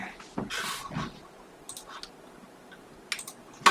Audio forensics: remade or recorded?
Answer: recorded